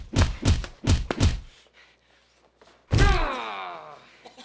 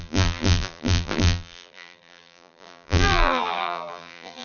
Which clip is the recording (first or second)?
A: first